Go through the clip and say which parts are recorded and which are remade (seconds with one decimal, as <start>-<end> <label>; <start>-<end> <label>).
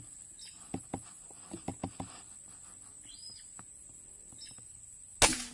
0.0-5.5 recorded